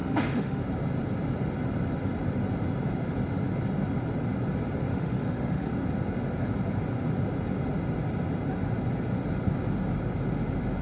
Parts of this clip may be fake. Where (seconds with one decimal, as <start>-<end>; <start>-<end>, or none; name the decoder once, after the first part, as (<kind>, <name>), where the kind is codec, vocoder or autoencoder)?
0.0-0.6 (autoencoder, DAC-VAE); 4.9-5.7

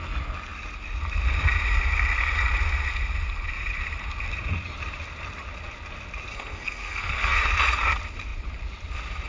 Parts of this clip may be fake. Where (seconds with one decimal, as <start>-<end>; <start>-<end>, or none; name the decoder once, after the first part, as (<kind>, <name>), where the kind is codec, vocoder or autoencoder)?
6.3-7.5 (codec, SNAC)

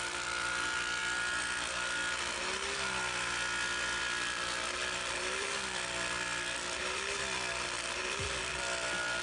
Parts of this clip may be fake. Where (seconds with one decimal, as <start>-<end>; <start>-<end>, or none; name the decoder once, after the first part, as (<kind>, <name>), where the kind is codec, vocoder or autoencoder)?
4.8-8.4 (vocoder, BigVGAN v2)